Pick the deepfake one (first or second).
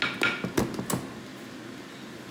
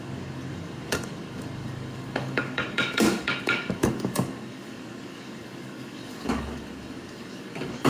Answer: second